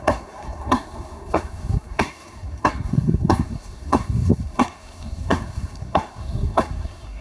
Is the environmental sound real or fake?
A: fake